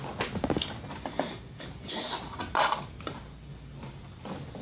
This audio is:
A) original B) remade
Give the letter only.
A